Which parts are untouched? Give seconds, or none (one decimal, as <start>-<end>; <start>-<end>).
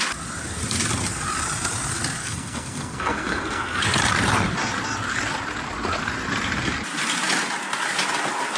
0.0-2.2; 3.8-8.6